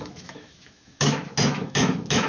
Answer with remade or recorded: remade